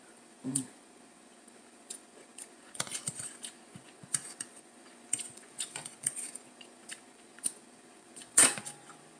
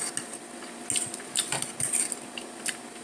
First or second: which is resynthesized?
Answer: first